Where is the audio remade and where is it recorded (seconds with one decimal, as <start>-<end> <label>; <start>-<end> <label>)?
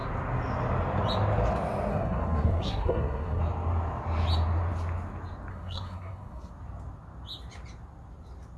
0.0-1.9 recorded; 1.9-3.4 remade; 3.4-5.5 recorded; 5.5-6.5 remade; 6.5-8.6 recorded